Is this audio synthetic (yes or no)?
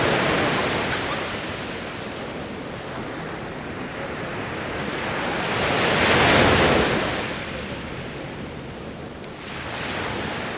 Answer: no